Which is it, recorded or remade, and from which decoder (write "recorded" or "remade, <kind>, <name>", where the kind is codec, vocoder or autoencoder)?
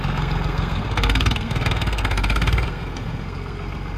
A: remade, codec, SNAC